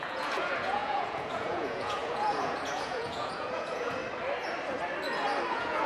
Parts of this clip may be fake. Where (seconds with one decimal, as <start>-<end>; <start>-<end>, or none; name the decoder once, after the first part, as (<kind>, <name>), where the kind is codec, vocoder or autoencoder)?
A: 0.0-4.0 (vocoder, Vocos); 5.5-5.9